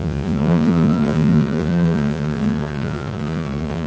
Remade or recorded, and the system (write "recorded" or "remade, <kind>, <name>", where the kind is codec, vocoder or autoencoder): remade, vocoder, Vocos